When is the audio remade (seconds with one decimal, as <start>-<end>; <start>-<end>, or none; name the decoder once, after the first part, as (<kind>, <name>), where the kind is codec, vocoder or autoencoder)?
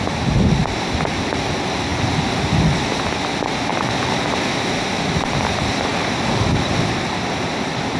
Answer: none